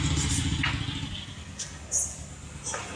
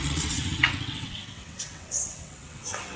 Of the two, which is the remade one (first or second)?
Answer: second